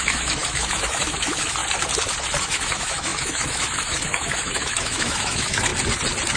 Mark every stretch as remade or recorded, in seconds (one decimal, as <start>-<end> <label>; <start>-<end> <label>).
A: 0.0-1.6 remade; 1.6-2.4 recorded; 2.4-5.7 remade; 5.7-6.4 recorded